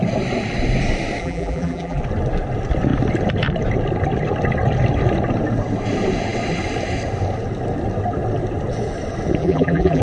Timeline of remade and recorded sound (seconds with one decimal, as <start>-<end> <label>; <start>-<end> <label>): 0.0-1.2 recorded; 1.2-2.0 remade; 2.0-9.4 recorded; 9.4-10.0 remade